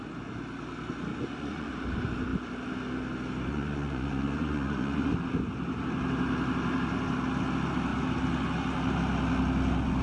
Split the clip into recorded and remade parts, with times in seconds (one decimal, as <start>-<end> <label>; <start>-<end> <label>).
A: 0.0-1.1 recorded; 1.1-1.7 remade; 1.7-3.5 recorded; 3.5-5.1 remade; 5.1-10.0 recorded